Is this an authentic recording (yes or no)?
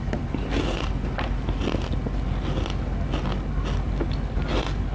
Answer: yes